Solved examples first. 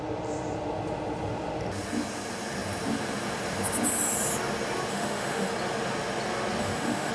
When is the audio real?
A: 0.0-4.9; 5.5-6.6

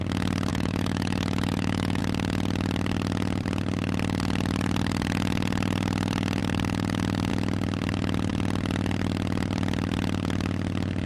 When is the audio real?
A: 0.0-0.5; 2.0-11.1